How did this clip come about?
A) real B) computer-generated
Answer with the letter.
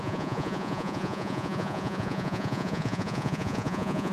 B